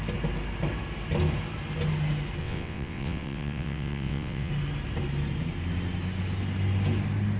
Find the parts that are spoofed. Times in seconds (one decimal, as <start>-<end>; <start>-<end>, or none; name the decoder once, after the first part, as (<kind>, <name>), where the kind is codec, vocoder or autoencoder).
2.4-4.5 (vocoder, WaveNeXt)